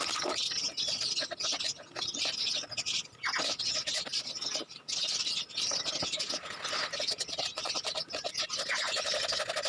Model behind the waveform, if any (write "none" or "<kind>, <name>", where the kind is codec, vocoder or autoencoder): none